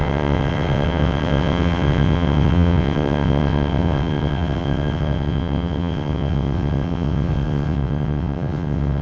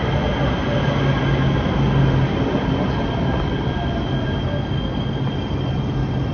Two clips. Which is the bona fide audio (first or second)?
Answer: second